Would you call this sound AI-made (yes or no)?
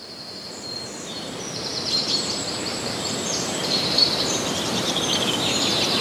yes